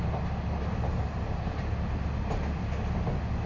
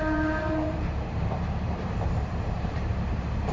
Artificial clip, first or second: second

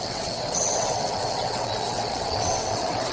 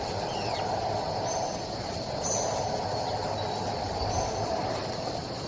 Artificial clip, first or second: first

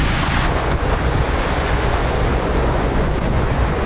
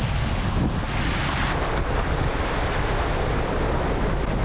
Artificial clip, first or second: first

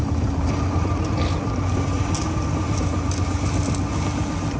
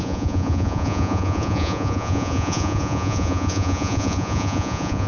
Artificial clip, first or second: second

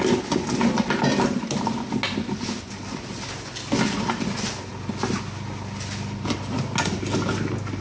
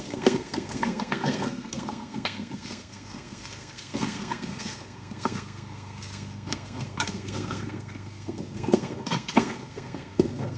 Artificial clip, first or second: second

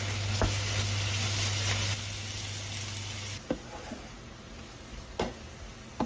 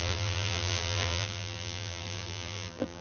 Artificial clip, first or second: second